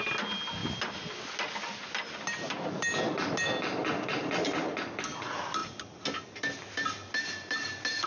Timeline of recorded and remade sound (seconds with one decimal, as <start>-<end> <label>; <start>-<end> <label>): 0.0-8.1 recorded